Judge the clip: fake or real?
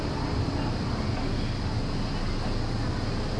real